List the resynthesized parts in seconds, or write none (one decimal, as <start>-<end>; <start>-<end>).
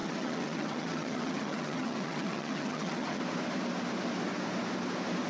0.0-3.2